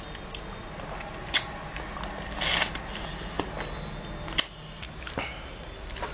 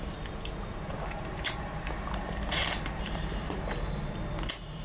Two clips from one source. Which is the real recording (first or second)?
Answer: first